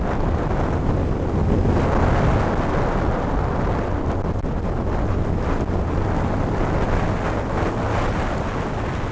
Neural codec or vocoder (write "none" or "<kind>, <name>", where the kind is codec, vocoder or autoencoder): none